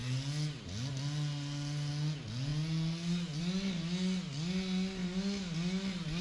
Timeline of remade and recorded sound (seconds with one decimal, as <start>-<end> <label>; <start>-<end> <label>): 0.0-6.2 recorded